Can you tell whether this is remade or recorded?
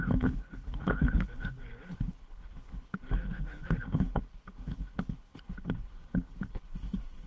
remade